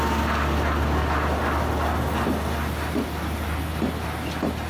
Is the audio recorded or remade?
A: recorded